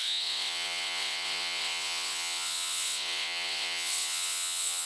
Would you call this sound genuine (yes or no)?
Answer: no